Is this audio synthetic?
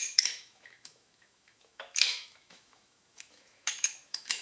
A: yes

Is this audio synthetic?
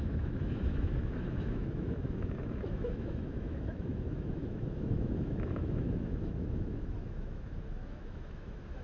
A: yes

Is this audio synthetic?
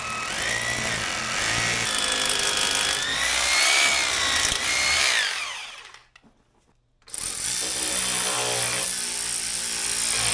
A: no